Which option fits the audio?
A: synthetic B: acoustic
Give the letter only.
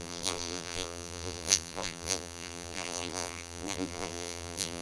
A